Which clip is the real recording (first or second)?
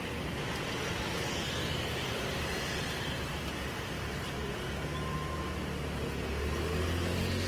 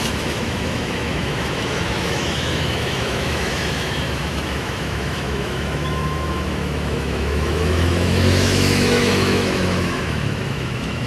first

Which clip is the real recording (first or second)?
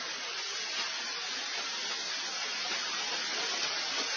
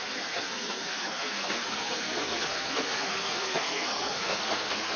first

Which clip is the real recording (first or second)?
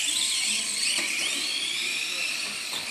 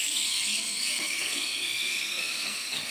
first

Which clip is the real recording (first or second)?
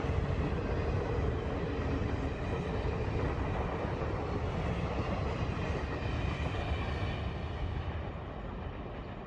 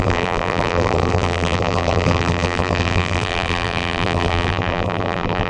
first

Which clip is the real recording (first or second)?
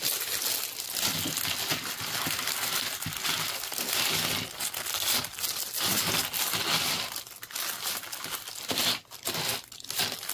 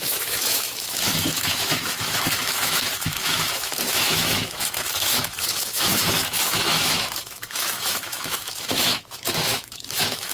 first